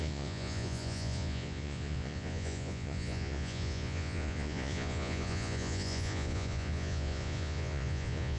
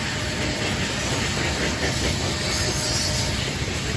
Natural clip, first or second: second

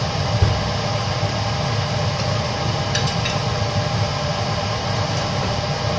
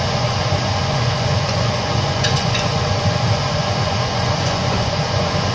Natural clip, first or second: first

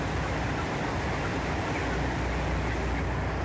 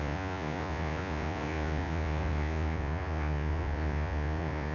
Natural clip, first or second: first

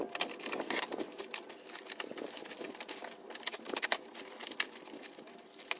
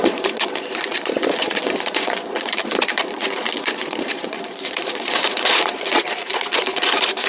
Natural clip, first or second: first